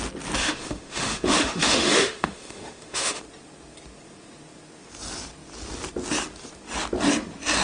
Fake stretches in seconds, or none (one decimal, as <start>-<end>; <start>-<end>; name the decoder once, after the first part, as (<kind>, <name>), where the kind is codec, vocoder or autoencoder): 0.4-3.2 (autoencoder, DAC-VAE)